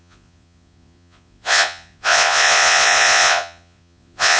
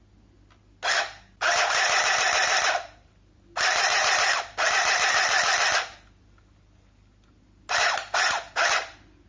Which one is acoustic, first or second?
second